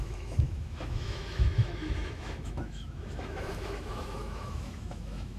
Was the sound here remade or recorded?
remade